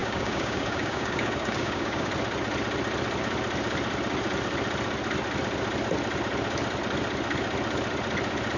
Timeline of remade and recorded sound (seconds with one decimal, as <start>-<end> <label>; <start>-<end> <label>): 0.0-2.1 remade; 2.1-8.6 recorded